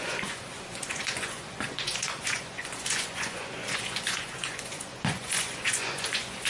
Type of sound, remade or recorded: remade